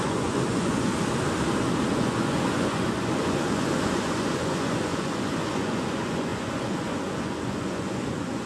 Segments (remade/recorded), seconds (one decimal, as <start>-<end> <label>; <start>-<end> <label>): 0.0-0.9 remade; 0.9-1.9 recorded; 1.9-8.5 remade

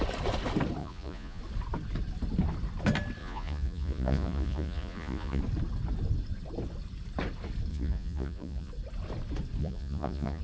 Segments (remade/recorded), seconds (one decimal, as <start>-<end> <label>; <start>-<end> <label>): 0.0-0.8 recorded; 0.8-1.4 remade; 1.4-3.2 recorded; 3.2-5.4 remade; 5.4-7.7 recorded; 7.7-8.7 remade; 8.7-9.6 recorded; 9.6-10.4 remade